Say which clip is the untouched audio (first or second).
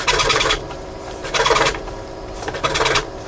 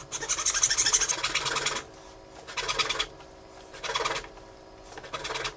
second